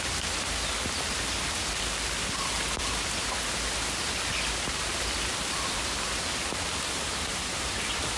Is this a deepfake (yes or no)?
no